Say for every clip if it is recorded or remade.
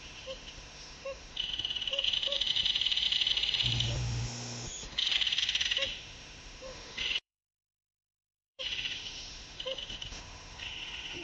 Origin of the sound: remade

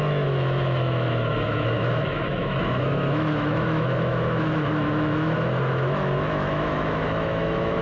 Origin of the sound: remade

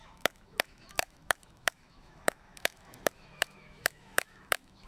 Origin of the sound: remade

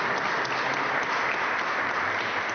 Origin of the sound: recorded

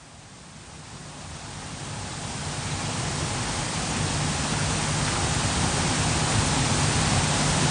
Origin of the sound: recorded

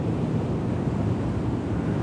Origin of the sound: recorded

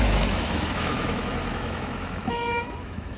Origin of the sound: remade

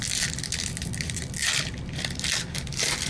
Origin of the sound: recorded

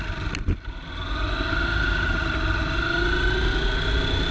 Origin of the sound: recorded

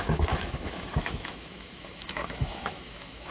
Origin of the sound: remade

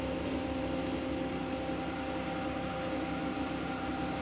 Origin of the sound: recorded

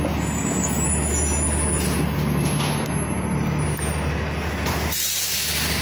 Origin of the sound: recorded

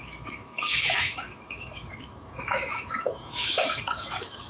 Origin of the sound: remade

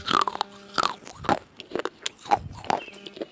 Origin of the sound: recorded